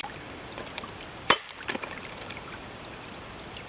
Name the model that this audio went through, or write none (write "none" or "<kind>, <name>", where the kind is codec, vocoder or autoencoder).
vocoder, BigVGAN v2